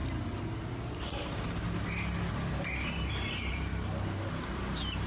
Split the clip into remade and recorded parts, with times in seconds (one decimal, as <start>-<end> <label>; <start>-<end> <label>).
0.0-3.1 recorded; 3.1-3.7 remade; 3.7-4.3 recorded; 4.3-5.1 remade